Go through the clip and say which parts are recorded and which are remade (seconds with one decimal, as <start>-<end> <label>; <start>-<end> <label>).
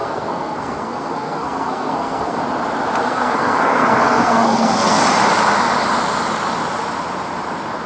0.0-2.4 remade; 2.4-3.0 recorded; 3.0-5.0 remade; 5.0-7.9 recorded